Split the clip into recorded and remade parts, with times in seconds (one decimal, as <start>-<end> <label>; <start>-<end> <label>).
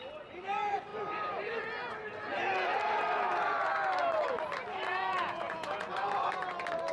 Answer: 0.0-4.9 recorded; 4.9-5.9 remade; 5.9-6.9 recorded